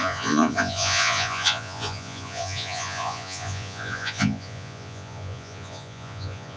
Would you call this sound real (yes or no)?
no